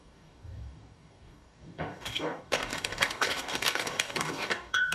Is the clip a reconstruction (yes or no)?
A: yes